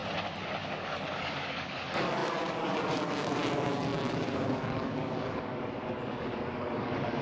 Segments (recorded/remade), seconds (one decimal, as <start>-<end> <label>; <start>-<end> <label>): 0.0-0.6 recorded; 0.6-7.2 remade